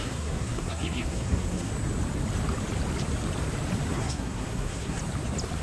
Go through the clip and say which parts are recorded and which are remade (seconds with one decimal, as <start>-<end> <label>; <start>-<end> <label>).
0.0-1.7 remade; 1.7-3.9 recorded; 3.9-5.0 remade; 5.0-5.6 recorded